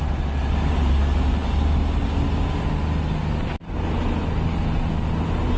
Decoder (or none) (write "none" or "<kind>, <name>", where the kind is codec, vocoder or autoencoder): none